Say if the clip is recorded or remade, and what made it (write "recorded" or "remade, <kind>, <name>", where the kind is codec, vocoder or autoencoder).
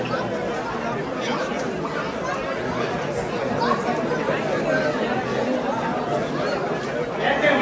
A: recorded